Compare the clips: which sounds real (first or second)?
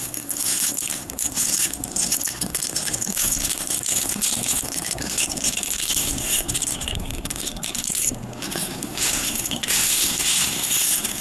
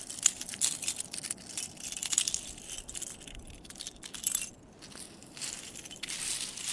second